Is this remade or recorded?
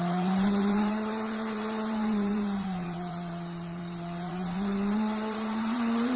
remade